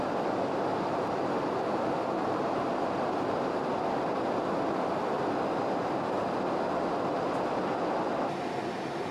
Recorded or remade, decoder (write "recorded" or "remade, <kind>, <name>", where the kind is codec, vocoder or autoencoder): recorded